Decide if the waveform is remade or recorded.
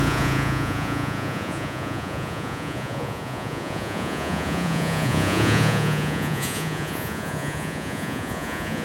remade